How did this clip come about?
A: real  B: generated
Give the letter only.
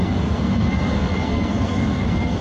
B